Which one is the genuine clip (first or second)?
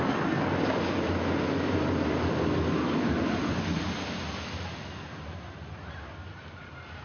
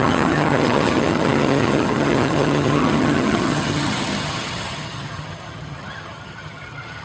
first